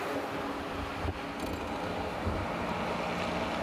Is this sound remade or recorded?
recorded